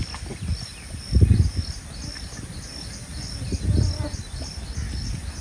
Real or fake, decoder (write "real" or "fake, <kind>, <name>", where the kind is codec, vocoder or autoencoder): real